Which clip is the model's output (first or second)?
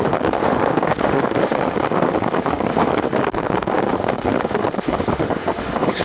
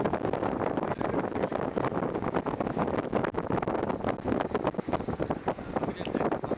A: first